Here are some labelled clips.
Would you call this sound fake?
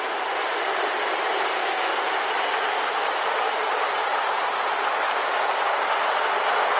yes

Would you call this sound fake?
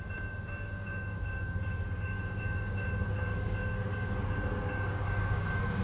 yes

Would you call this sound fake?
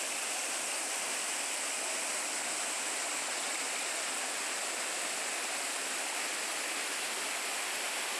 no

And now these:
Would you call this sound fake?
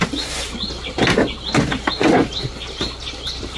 no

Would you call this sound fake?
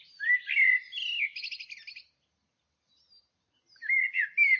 no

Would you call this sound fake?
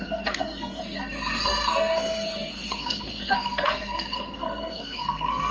yes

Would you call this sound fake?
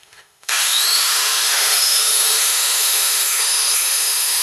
yes